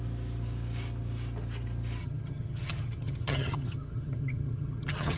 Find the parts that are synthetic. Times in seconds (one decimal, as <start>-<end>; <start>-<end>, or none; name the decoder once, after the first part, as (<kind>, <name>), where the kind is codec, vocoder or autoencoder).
2.0-5.2 (vocoder, HiFi-GAN)